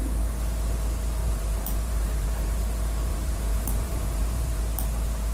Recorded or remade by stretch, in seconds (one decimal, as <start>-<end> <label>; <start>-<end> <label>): 0.0-1.2 recorded; 1.2-2.6 remade; 2.6-3.1 recorded; 3.1-4.6 remade; 4.6-5.3 recorded

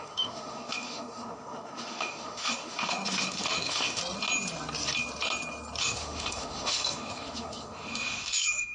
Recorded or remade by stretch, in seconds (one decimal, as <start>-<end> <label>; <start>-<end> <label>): 0.0-4.0 remade; 4.0-5.8 recorded; 5.8-8.7 remade

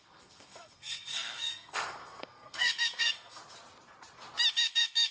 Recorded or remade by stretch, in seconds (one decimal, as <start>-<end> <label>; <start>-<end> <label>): 0.0-3.4 remade; 3.4-4.5 recorded; 4.5-5.1 remade

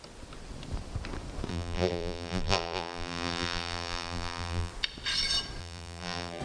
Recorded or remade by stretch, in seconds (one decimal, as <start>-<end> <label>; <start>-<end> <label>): 0.0-1.5 recorded; 1.5-4.7 remade; 4.7-5.6 recorded; 5.6-6.4 remade

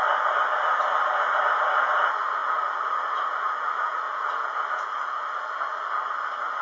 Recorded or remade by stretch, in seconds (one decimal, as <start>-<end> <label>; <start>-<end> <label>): 0.0-2.4 recorded; 2.4-5.5 remade; 5.5-6.6 recorded

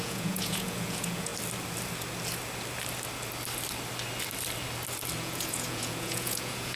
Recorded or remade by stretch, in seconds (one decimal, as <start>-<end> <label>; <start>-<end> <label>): 0.0-1.3 remade; 1.3-5.2 recorded; 5.2-6.8 remade